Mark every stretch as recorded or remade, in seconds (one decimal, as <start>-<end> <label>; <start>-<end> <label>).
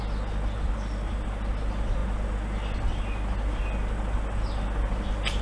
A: 0.0-5.4 recorded